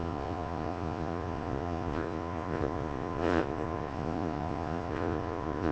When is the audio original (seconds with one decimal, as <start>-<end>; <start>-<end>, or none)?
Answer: none